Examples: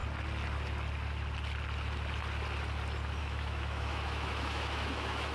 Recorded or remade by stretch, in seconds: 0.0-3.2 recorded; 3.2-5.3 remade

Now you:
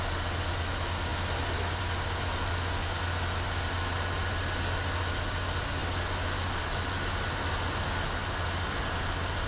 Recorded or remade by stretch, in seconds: 0.0-9.5 recorded

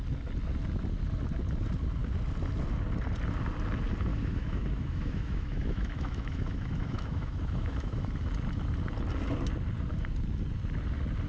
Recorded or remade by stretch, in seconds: 0.0-4.1 recorded; 4.1-8.1 remade; 8.1-11.3 recorded

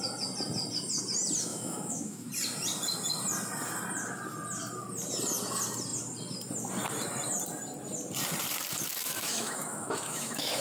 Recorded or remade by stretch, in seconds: 0.0-1.5 recorded; 1.5-2.3 remade; 2.3-8.9 recorded; 8.9-10.6 remade

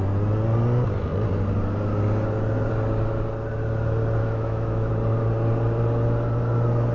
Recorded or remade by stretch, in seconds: 0.0-4.2 recorded; 4.2-4.9 remade; 4.9-6.9 recorded